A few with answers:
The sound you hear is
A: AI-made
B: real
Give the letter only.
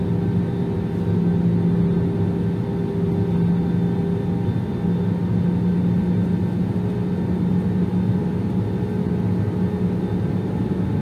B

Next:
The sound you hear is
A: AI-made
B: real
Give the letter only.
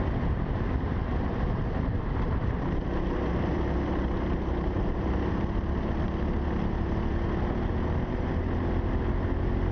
B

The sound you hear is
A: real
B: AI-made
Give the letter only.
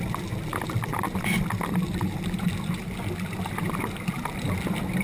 A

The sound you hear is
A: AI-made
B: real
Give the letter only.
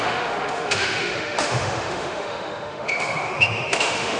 A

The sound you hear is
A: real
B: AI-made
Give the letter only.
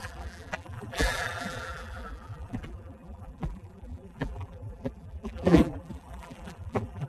B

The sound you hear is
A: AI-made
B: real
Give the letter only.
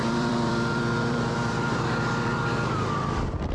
A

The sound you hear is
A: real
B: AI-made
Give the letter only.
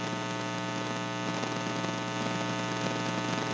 A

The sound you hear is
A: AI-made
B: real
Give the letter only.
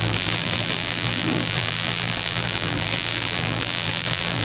A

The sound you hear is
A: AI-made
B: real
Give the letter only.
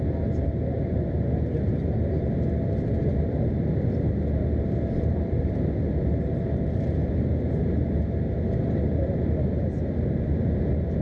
B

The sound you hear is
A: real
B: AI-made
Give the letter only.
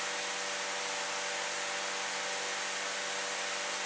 A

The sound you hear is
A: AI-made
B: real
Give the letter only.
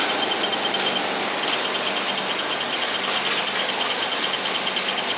B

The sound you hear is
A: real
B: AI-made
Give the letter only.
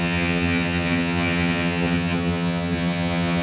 B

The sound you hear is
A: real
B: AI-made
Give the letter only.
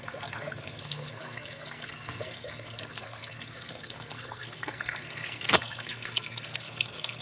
B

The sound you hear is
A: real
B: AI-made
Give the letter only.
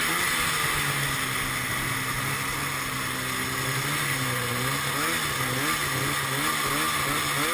A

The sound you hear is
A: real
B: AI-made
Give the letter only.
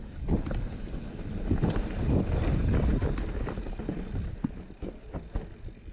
A